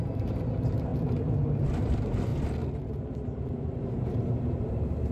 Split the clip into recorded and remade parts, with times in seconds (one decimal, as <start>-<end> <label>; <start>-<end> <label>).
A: 0.0-2.3 remade; 2.3-3.5 recorded; 3.5-5.1 remade